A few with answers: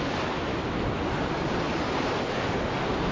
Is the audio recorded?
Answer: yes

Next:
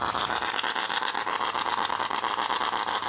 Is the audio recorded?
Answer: yes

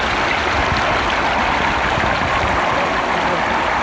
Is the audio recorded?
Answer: yes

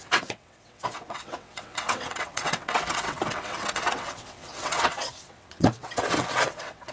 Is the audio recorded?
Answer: no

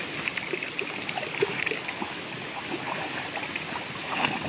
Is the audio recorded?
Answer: yes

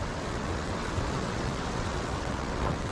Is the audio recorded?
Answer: no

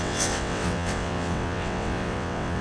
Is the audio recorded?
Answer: no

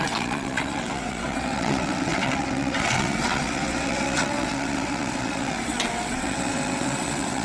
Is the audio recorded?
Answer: no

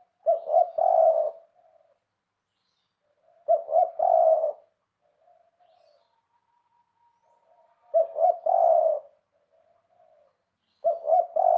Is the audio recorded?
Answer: yes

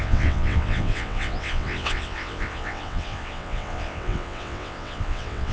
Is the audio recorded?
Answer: no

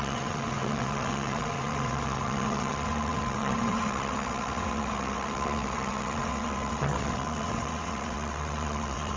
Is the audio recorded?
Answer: no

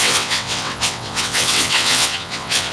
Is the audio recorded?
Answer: no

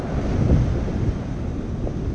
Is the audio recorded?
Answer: yes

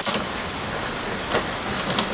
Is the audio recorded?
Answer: yes